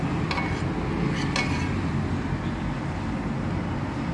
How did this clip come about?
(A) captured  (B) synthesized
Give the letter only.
A